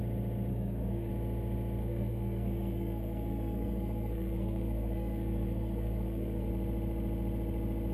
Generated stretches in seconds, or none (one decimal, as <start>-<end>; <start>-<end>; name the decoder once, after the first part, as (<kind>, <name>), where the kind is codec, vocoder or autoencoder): 0.5-1.1 (codec, SNAC); 1.8-6.5